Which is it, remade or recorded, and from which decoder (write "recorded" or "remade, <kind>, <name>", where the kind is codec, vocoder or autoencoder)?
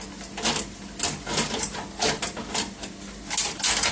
recorded